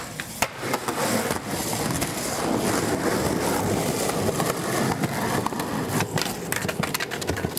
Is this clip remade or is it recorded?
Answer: recorded